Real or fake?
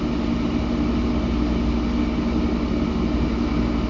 real